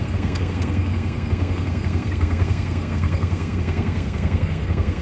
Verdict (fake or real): fake